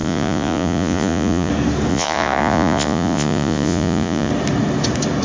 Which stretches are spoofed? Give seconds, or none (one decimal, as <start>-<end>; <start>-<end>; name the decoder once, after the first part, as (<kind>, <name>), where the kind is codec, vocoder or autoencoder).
0.0-1.5 (vocoder, Vocos); 1.9-4.3